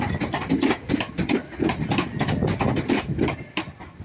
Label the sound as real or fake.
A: real